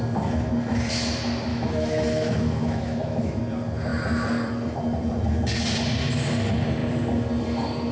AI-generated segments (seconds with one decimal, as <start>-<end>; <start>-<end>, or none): 1.5-3.4